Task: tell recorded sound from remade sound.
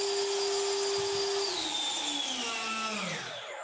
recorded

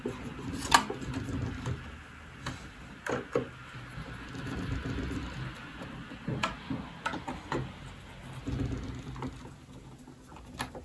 recorded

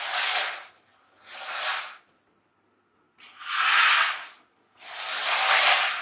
recorded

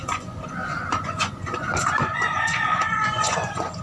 remade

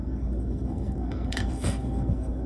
remade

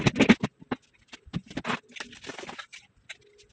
recorded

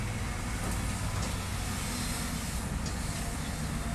recorded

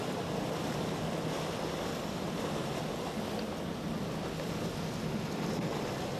recorded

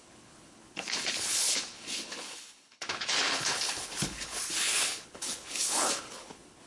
remade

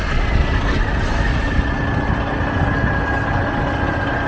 recorded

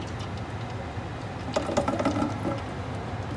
recorded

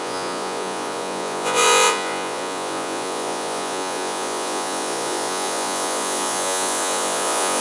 remade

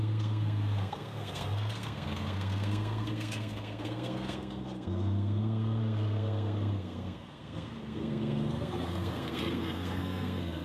remade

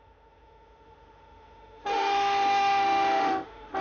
remade